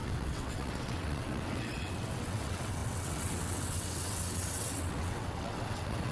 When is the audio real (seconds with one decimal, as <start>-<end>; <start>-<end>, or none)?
none